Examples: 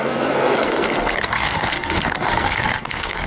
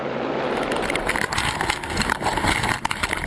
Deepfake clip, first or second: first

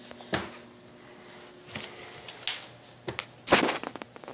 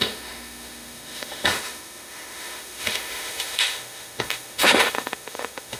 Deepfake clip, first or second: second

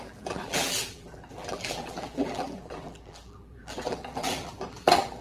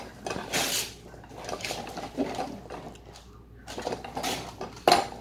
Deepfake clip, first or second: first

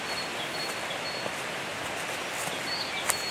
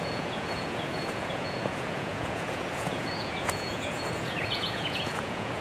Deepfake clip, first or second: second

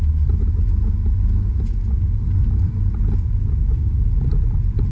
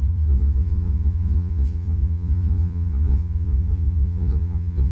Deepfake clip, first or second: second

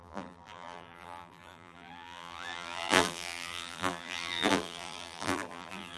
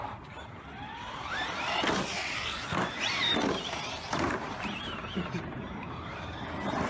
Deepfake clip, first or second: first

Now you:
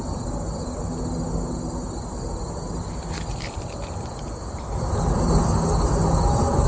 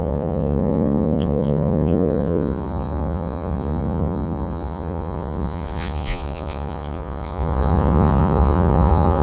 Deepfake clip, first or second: second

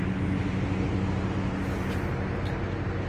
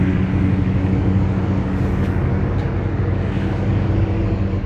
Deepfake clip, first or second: second